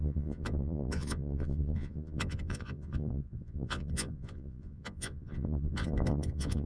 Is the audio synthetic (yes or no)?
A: yes